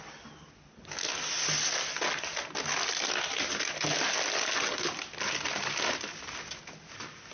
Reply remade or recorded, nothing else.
recorded